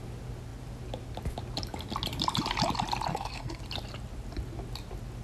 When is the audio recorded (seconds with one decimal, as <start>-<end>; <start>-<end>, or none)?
0.0-3.1; 3.6-5.2